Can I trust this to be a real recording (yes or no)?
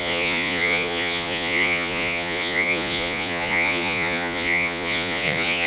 no